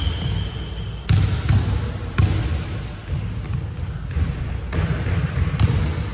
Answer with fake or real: real